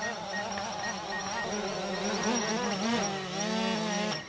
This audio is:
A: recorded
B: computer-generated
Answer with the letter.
A